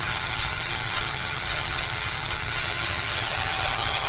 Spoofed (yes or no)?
yes